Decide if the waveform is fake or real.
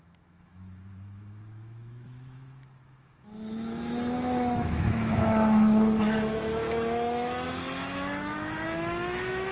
fake